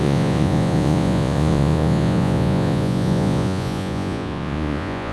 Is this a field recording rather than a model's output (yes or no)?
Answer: no